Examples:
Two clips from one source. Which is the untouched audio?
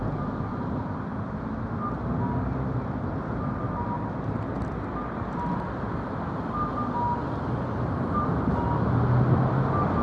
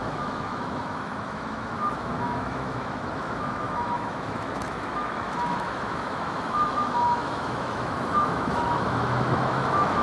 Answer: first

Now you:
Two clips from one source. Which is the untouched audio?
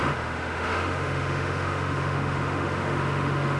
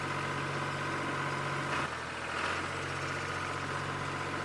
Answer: second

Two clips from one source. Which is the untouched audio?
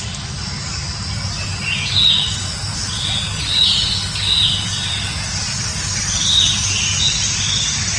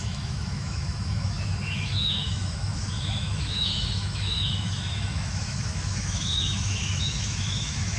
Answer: first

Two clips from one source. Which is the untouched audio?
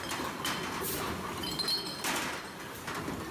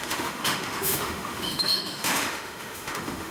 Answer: first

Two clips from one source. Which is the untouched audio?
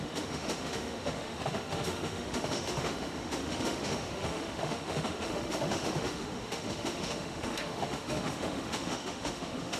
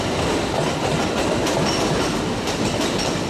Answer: second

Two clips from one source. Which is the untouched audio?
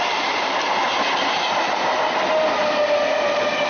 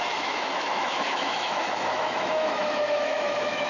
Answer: first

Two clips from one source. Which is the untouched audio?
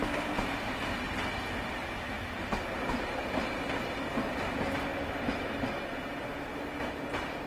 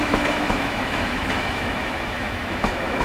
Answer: first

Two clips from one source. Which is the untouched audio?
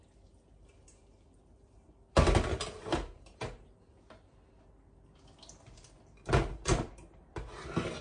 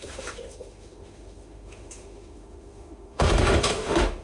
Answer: first